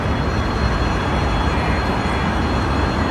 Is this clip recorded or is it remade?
recorded